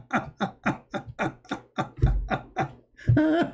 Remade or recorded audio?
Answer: recorded